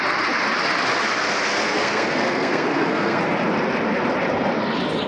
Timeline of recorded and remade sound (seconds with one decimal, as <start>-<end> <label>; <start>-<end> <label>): 0.0-1.6 recorded; 1.6-3.2 remade; 3.2-5.1 recorded